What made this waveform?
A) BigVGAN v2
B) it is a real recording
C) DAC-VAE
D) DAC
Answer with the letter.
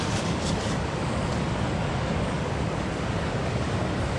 D